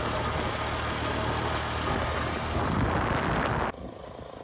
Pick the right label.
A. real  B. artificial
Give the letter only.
A